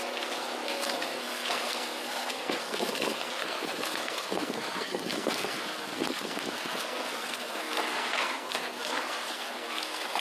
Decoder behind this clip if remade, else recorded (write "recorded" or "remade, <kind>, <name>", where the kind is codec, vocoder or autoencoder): remade, codec, SNAC